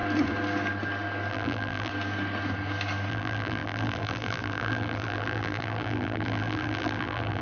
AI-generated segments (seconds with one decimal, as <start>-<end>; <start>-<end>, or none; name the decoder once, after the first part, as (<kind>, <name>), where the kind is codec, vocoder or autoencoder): 1.3-1.9 (vocoder, BigVGAN v2); 3.1-7.4